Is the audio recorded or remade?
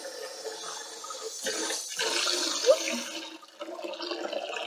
recorded